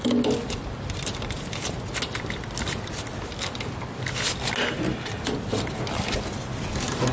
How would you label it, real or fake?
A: real